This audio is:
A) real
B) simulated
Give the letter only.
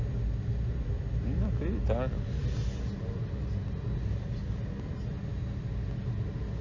A